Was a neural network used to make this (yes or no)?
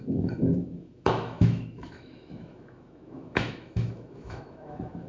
yes